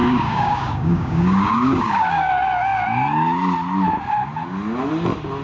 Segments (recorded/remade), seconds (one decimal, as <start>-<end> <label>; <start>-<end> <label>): 0.0-2.3 remade; 2.3-5.4 recorded